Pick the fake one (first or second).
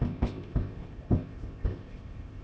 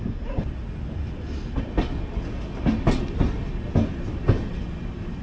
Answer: first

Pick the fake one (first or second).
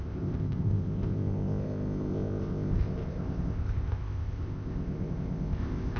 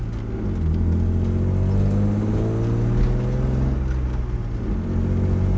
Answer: first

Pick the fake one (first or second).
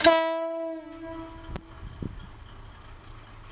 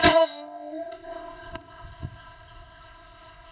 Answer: second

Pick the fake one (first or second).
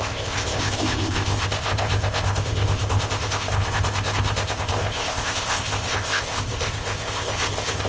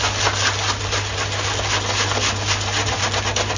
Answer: first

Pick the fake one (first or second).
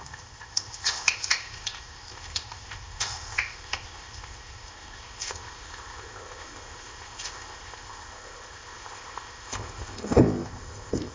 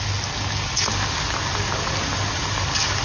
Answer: first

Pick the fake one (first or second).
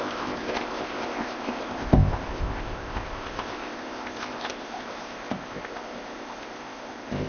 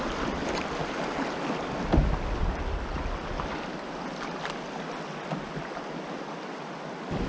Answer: first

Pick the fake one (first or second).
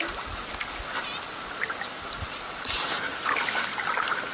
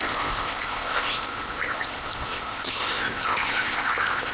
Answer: second